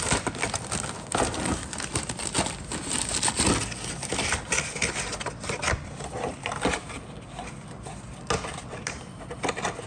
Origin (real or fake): real